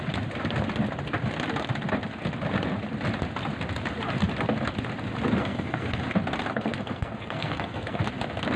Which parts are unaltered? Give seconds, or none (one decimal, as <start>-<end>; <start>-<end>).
0.0-5.4; 6.0-6.5; 8.0-8.6